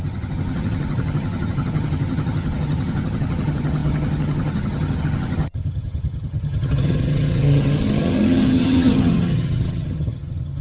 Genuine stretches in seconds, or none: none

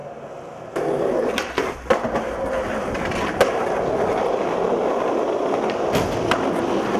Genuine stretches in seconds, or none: 0.0-7.0

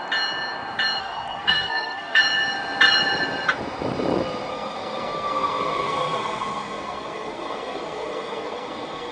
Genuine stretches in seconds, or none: 0.0-1.0; 2.2-4.5

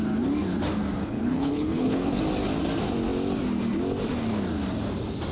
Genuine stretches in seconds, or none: 0.0-1.0; 2.2-5.3

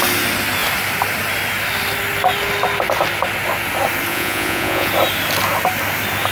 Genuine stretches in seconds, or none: 0.0-4.1; 4.9-6.3